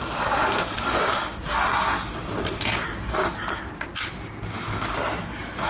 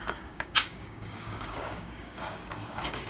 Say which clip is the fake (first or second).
second